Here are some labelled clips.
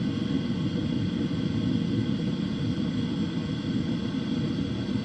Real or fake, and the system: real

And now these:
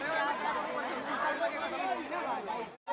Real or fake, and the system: real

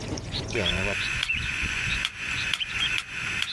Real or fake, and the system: fake, vocoder, Vocos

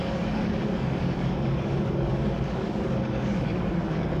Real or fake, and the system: fake, codec, DAC